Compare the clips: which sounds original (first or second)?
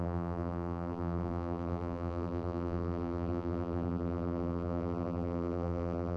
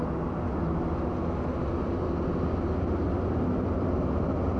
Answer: second